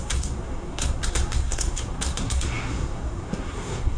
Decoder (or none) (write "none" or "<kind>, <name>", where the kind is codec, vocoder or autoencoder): codec, SNAC